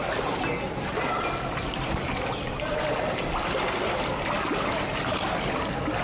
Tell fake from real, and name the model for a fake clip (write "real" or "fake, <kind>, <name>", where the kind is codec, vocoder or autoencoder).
real